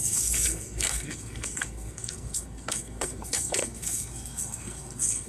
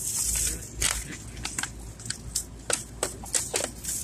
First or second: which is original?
second